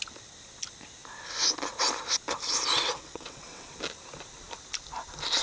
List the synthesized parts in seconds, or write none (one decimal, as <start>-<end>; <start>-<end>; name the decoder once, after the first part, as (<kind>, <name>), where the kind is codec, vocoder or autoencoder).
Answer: 2.7-3.7 (vocoder, WaveNeXt)